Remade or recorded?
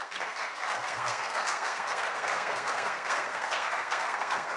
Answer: remade